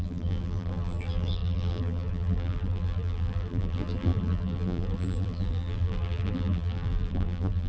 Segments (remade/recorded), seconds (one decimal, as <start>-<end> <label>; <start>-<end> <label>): 0.0-7.7 remade

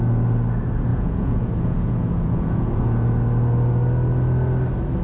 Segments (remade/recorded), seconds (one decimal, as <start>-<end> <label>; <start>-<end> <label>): 0.0-0.9 recorded; 0.9-2.8 remade; 2.8-5.0 recorded

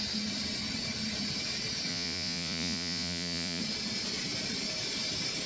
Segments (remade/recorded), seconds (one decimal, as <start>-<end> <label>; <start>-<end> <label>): 0.0-1.9 recorded; 1.9-3.6 remade; 3.6-5.5 recorded

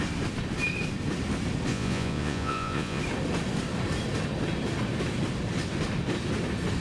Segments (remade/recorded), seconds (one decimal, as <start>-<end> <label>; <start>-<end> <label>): 0.0-1.7 recorded; 1.7-3.0 remade; 3.0-6.8 recorded

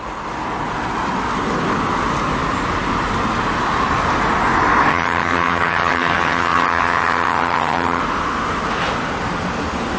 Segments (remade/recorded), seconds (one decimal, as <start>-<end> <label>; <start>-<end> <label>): 0.0-4.9 recorded; 4.9-8.0 remade; 8.0-10.0 recorded

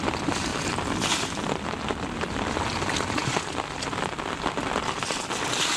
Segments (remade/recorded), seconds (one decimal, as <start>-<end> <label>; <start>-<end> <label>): 0.0-0.5 recorded; 0.5-1.6 remade; 1.6-5.8 recorded

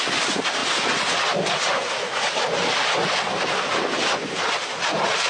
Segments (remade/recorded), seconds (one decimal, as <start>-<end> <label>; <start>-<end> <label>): 0.0-5.3 recorded